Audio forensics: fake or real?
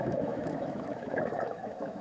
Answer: fake